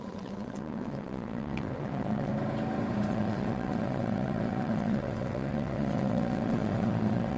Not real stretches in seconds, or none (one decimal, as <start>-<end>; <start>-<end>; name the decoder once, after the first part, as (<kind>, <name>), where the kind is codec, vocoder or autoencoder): 0.0-2.3 (vocoder, WaveNeXt); 3.1-7.4